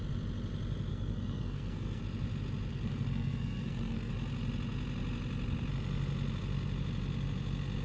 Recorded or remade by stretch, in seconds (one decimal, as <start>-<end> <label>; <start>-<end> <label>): 0.0-0.9 recorded; 0.9-2.0 remade; 2.0-2.7 recorded; 2.7-4.1 remade; 4.1-7.8 recorded